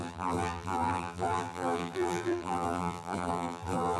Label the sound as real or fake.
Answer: fake